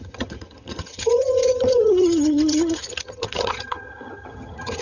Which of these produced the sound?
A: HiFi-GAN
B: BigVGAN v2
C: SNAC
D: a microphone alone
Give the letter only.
A